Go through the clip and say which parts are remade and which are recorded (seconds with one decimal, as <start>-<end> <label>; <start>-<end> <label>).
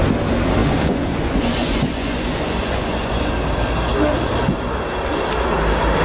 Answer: 0.0-0.6 recorded; 0.6-3.3 remade; 3.3-6.0 recorded